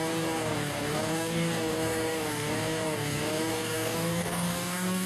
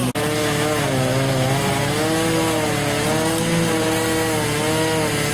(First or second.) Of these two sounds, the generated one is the first